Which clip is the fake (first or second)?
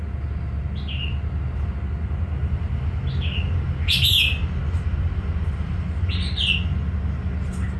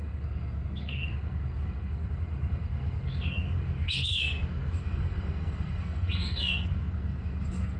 second